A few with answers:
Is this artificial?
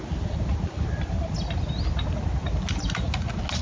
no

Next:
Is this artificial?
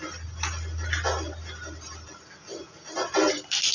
no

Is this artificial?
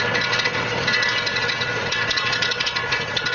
yes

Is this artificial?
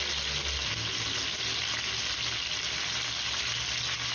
no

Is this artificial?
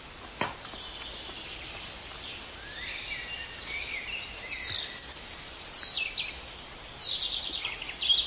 no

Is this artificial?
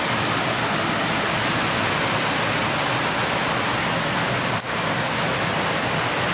no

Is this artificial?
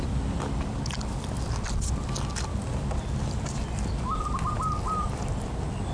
no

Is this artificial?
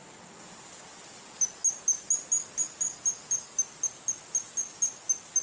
no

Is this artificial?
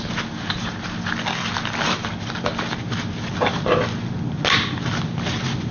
no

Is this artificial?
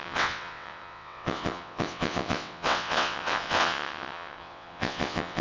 yes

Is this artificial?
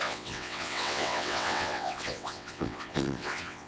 yes